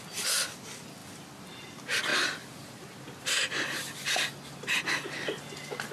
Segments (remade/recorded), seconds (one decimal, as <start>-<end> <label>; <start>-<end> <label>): 0.0-5.9 recorded